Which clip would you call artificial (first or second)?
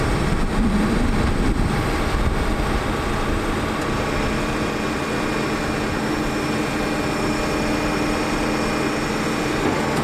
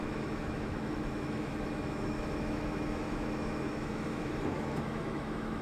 second